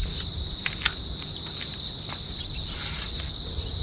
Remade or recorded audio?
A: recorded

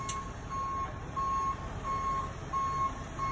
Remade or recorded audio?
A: recorded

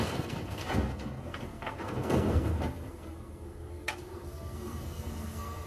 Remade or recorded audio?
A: remade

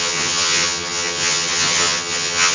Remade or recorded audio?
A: remade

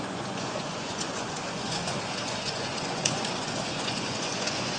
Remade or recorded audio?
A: remade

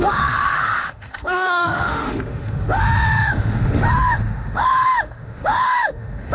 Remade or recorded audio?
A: remade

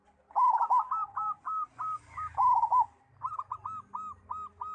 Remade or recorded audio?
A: recorded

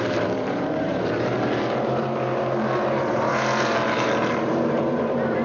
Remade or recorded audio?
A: remade